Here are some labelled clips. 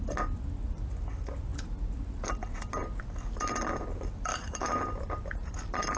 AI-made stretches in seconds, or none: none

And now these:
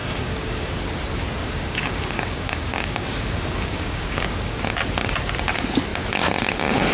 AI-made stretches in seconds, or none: 0.0-0.8 (codec, DAC); 1.4-4.6

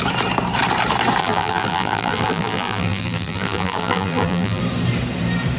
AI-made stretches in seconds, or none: 1.2-4.6 (vocoder, BigVGAN v2)

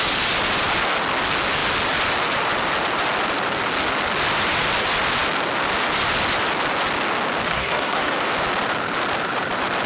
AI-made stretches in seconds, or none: 7.5-8.1 (codec, SNAC)

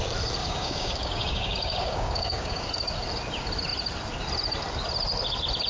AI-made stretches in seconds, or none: 0.4-2.7 (codec, DAC)

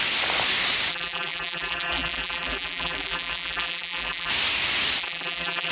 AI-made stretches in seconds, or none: 0.9-4.3 (vocoder, BigVGAN v2); 5.0-5.7

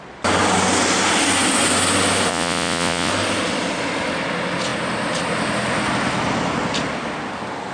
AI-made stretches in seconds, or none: 2.3-3.1 (vocoder, Vocos)

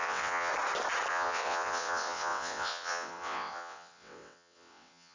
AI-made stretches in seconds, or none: 0.0-0.5 (vocoder, WaveNeXt); 1.1-5.1